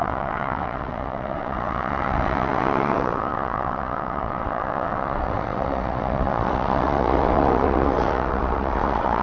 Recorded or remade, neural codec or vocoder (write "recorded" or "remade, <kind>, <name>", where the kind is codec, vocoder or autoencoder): remade, vocoder, WaveNeXt